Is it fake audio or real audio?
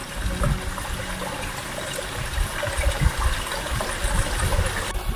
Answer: real